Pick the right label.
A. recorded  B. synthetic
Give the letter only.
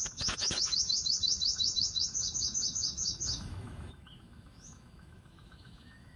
B